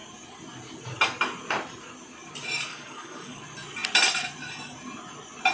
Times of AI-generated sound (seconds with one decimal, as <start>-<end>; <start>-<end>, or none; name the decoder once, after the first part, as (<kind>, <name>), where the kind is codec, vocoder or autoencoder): 2.7-3.4 (codec, DAC)

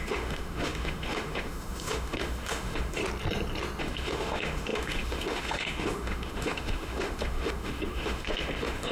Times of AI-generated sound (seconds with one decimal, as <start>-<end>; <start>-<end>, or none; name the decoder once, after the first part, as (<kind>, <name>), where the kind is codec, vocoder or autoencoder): 0.0-3.0 (autoencoder, DAC-VAE); 3.8-8.9

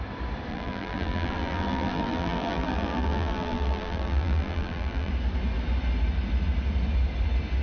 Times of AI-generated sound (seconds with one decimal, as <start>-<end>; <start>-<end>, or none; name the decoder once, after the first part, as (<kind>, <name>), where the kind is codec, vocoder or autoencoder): 0.5-5.1 (vocoder, BigVGAN v2)

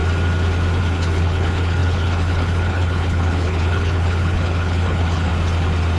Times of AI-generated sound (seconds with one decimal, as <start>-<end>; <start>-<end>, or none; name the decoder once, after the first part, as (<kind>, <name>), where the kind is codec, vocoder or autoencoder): 0.8-5.3 (codec, HILCodec)